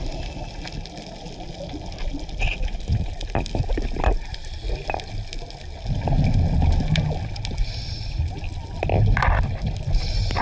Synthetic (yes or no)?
no